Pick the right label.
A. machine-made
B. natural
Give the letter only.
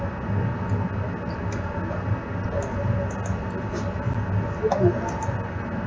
B